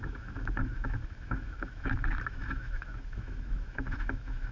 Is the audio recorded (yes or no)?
no